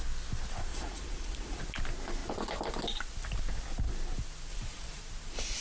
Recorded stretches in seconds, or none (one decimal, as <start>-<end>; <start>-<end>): 0.0-0.7; 1.6-4.5; 5.0-5.6